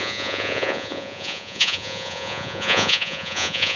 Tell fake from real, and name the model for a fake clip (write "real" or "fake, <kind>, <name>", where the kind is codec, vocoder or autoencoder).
fake, vocoder, Vocos